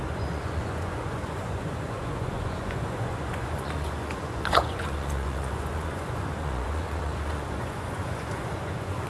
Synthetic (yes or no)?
yes